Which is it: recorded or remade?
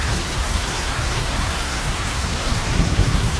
remade